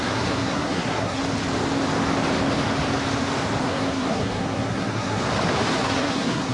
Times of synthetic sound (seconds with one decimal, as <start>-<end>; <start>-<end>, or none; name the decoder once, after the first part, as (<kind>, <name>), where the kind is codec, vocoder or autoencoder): 0.0-1.2 (codec, SNAC); 3.6-5.2; 5.7-6.5

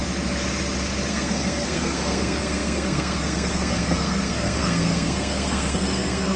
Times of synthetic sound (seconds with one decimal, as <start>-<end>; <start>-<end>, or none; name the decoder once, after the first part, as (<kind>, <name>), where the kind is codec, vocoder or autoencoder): 1.1-6.4 (codec, SNAC)

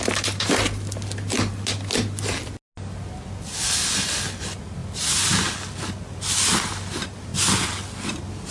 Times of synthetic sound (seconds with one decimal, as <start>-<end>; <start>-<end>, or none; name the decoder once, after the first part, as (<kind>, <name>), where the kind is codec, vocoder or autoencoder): none

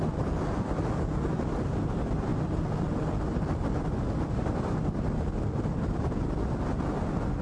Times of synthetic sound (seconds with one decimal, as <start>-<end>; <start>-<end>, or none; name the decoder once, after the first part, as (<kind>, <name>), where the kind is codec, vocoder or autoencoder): none

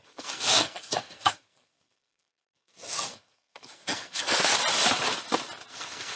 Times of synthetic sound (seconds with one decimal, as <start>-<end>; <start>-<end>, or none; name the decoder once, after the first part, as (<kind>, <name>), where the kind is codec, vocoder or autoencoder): 0.0-4.5 (codec, SNAC); 5.7-6.2

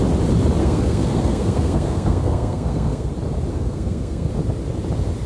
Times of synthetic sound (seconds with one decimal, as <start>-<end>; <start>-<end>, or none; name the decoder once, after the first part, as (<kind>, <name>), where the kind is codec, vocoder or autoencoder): 0.6-3.1 (codec, SNAC); 3.5-4.3